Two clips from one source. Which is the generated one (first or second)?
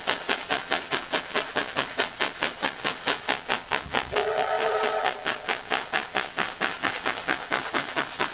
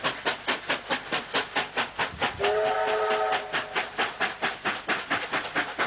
first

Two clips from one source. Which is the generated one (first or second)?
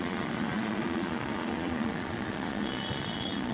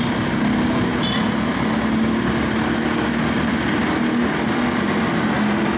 first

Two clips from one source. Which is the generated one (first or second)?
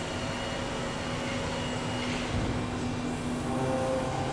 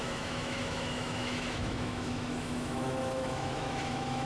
second